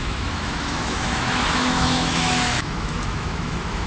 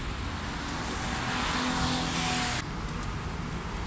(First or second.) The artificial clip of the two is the first